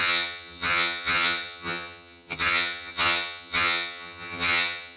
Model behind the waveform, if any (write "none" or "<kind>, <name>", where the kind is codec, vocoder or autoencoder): vocoder, HiFi-GAN